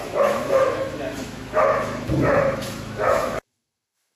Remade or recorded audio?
remade